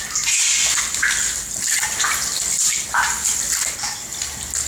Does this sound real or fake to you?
real